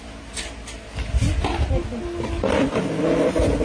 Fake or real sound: real